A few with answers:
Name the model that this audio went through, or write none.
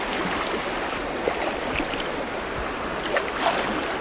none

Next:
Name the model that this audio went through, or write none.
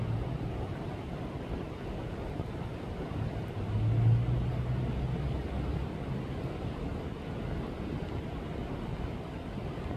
none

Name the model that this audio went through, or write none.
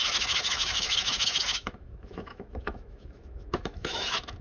autoencoder, DAC-VAE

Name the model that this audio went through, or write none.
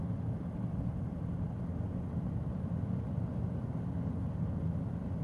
none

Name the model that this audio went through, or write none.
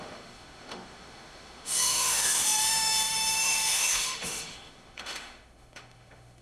autoencoder, DAC-VAE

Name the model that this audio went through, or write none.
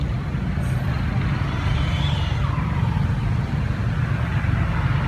none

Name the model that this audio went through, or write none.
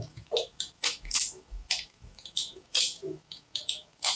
autoencoder, DAC-VAE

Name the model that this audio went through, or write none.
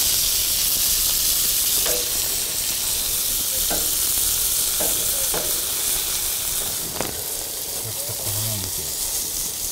none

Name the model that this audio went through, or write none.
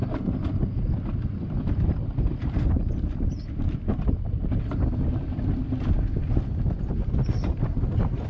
none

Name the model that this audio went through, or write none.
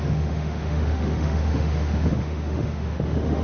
autoencoder, DAC-VAE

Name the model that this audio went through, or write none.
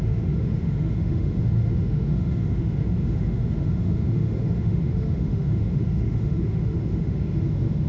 autoencoder, DAC-VAE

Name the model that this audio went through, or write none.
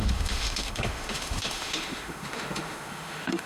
autoencoder, DAC-VAE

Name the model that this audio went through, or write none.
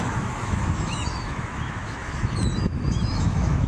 autoencoder, DAC-VAE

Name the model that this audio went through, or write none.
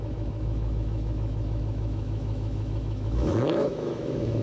autoencoder, DAC-VAE